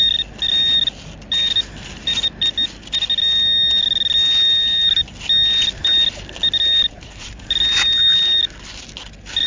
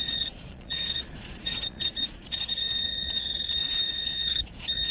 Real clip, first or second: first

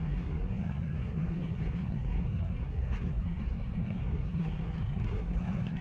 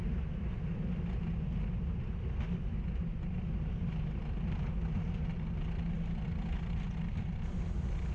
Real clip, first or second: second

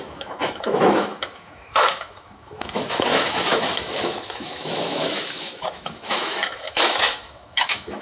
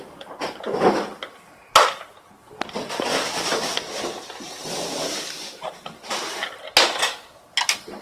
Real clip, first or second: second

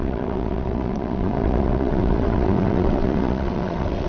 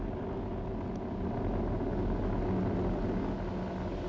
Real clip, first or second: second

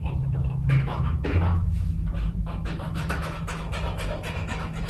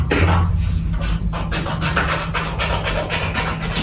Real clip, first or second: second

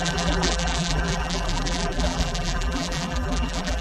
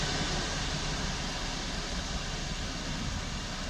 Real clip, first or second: second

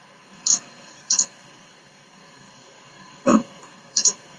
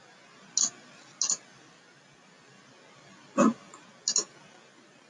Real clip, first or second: second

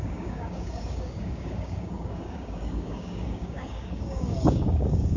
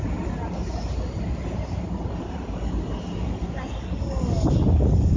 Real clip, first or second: second